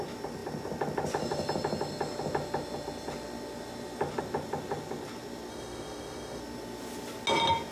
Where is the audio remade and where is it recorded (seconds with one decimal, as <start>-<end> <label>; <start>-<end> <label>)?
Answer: 0.0-5.5 recorded; 5.5-6.4 remade; 6.4-7.7 recorded